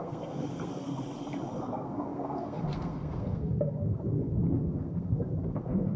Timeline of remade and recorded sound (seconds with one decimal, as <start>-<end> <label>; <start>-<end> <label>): 0.0-0.9 remade; 0.9-1.6 recorded; 1.6-6.0 remade